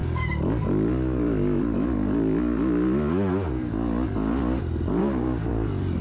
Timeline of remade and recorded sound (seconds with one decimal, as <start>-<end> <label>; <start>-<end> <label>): 0.0-5.0 recorded; 5.0-5.5 remade; 5.5-6.0 recorded